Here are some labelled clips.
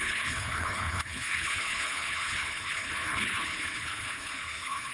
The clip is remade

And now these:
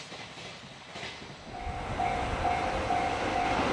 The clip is recorded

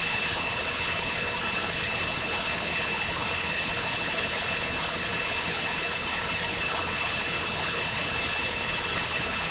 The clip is remade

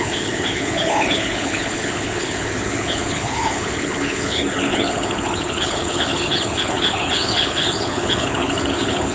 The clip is remade